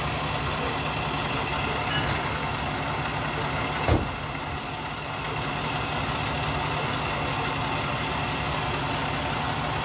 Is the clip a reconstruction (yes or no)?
no